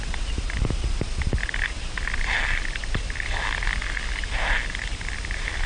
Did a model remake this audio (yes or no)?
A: no